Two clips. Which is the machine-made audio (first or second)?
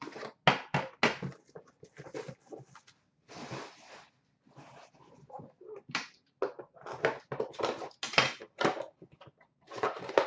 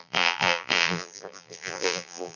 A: second